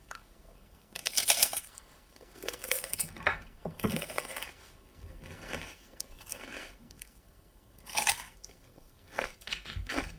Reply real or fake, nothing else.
fake